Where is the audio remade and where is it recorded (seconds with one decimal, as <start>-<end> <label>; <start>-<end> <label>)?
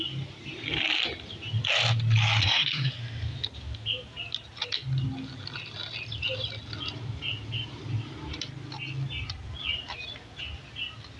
0.0-2.4 recorded; 2.4-3.0 remade; 3.0-11.2 recorded